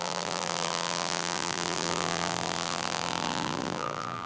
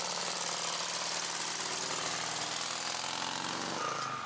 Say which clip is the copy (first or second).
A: first